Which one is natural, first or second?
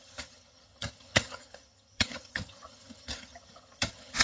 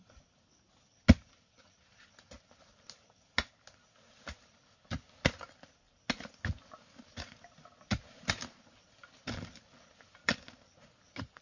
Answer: second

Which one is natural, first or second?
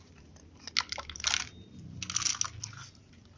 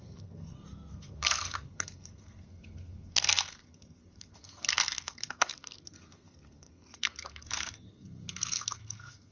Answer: first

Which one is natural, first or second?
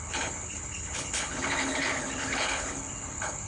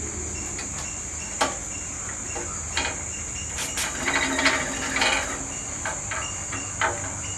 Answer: second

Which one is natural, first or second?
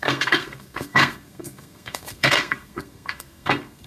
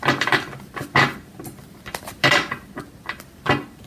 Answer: second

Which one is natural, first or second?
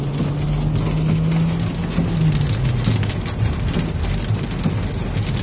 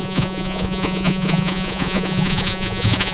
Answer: first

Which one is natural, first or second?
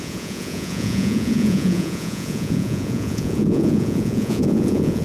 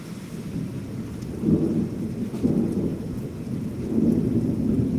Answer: second